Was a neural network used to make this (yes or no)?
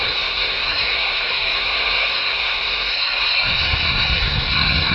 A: yes